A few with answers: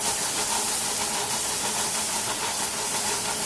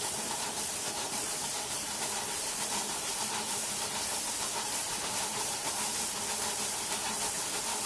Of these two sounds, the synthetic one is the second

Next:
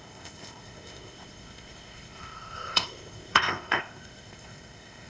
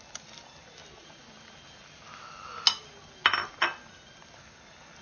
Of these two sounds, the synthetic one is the first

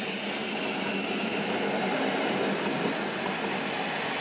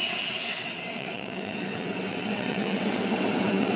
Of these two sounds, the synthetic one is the second